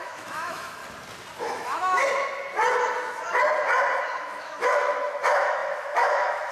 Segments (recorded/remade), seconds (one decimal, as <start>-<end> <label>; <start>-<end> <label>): 0.0-0.8 remade; 0.8-1.4 recorded; 1.4-2.0 remade; 2.0-4.2 recorded; 4.2-6.5 remade